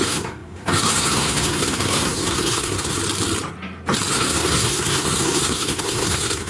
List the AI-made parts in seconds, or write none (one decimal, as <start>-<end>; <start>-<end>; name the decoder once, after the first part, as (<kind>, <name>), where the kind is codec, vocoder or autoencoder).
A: 0.0-3.0 (codec, SNAC); 4.1-6.5